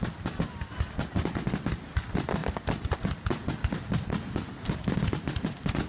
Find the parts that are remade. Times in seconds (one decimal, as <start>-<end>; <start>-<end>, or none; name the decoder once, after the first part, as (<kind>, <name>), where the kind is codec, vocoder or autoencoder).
none